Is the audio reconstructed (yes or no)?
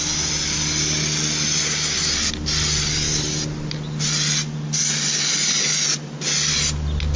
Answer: no